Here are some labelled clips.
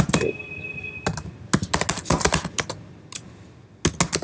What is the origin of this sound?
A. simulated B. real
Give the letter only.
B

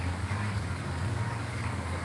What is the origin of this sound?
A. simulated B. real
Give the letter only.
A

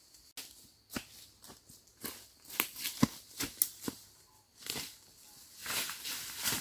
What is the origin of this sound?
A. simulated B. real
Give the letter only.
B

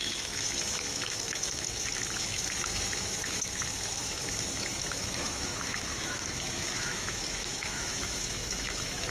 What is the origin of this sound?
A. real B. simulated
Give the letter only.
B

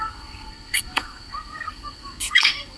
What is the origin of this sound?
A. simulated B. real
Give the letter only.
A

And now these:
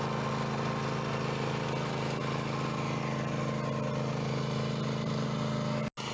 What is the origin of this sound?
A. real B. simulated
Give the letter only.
A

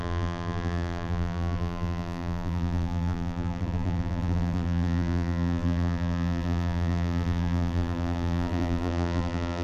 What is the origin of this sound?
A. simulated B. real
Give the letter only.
A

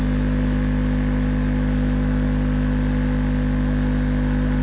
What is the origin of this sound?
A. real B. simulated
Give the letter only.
A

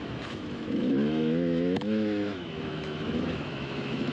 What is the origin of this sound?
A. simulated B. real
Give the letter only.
A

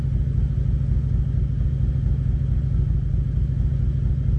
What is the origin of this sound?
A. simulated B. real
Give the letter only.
B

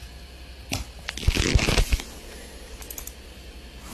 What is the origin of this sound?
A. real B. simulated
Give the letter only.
A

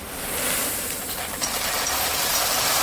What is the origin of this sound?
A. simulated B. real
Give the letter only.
A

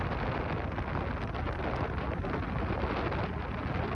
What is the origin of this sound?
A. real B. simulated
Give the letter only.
A